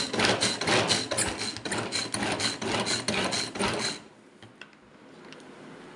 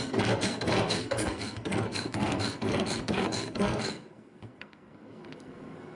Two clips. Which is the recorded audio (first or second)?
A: first